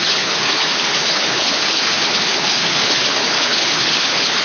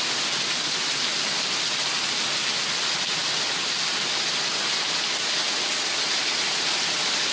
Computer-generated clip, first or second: first